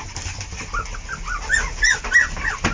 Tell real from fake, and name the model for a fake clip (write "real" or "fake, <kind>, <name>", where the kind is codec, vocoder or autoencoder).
real